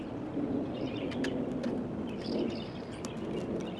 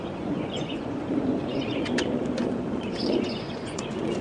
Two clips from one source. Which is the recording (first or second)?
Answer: first